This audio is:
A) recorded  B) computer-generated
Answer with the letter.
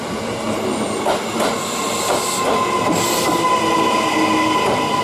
A